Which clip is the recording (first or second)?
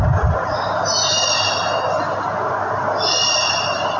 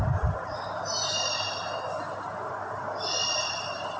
first